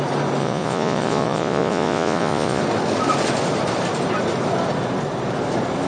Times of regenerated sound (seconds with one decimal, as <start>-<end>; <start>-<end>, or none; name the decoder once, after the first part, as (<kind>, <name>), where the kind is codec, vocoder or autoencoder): 0.4-2.6 (vocoder, Vocos)